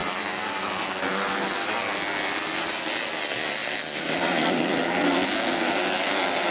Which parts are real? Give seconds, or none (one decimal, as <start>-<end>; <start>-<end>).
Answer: 0.0-6.5

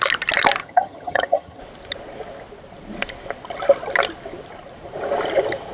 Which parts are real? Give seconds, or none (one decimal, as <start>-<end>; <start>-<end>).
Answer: 0.0-0.6; 1.6-5.7

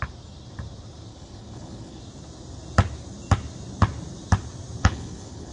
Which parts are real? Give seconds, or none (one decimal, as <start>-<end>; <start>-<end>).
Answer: 0.0-1.1; 2.0-4.8

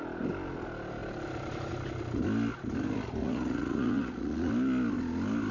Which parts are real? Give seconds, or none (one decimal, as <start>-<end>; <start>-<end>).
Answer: 0.0-3.2; 4.5-5.5

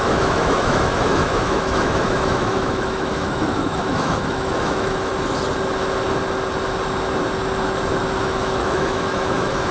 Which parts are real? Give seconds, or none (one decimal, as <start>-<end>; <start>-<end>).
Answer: 5.1-8.2

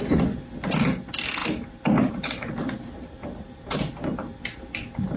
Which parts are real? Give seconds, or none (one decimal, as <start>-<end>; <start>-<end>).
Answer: 0.0-5.2

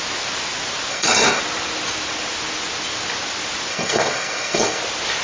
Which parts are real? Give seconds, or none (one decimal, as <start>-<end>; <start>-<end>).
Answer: 0.0-0.9; 1.4-3.7; 4.8-5.2